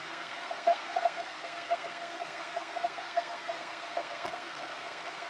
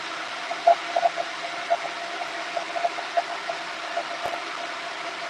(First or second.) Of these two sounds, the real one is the second